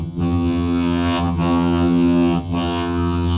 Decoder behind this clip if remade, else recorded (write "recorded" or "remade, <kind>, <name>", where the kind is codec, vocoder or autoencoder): remade, vocoder, HiFi-GAN